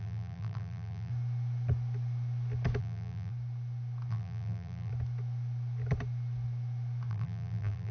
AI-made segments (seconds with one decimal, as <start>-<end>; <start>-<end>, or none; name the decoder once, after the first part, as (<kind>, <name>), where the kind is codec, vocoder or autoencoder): 0.0-1.1 (vocoder, BigVGAN v2); 2.8-3.3; 4.1-4.9; 7.1-7.9